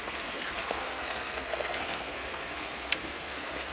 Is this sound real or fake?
fake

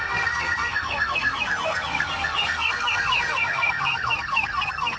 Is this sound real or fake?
fake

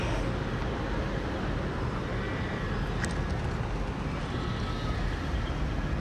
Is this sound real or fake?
real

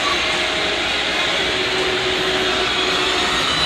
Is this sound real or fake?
real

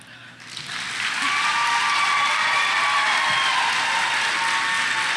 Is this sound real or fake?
real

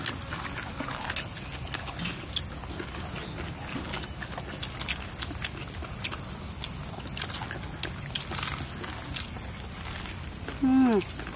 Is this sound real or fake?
real